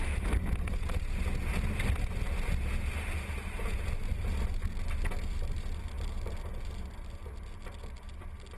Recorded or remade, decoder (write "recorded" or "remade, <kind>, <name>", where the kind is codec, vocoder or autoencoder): recorded